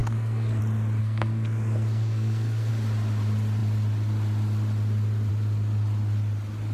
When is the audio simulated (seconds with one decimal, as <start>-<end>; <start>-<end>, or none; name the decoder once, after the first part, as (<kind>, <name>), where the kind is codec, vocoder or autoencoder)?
0.0-0.6 (codec, SNAC); 1.0-2.7

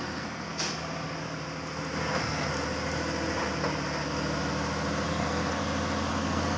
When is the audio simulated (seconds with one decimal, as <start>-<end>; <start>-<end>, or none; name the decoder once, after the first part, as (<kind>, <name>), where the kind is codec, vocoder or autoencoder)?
0.0-0.5 (codec, SNAC); 2.1-2.5; 5.1-5.6; 6.1-6.6

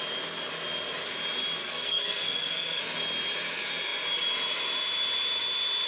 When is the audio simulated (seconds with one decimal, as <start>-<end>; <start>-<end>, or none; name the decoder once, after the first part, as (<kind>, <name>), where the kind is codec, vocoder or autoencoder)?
1.6-2.8 (codec, SNAC)

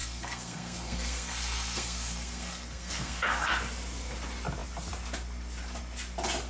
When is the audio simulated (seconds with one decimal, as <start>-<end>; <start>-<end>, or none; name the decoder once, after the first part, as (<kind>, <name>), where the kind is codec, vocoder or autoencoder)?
0.0-3.5 (codec, SNAC)

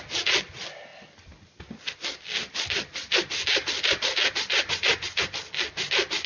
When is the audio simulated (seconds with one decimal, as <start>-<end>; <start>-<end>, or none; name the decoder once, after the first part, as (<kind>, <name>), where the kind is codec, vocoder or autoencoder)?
none

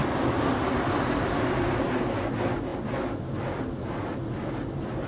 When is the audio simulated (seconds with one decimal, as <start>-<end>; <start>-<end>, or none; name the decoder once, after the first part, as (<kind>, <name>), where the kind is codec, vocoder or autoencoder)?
none

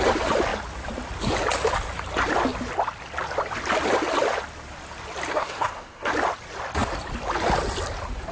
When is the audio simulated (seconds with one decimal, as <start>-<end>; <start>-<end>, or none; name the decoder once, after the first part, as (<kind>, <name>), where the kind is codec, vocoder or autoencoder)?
5.3-6.1 (codec, SNAC)